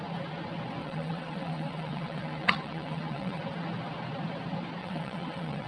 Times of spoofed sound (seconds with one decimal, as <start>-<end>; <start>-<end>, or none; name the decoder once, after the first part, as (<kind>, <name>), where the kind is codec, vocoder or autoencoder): 0.8-3.4 (vocoder, WaveNeXt); 4.8-5.7